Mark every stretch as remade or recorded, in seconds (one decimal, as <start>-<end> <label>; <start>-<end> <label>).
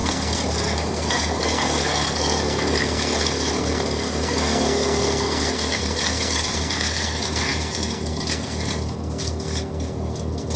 0.0-10.6 remade